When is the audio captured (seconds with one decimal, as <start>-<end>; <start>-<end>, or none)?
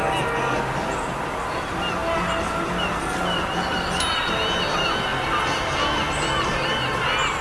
0.0-7.4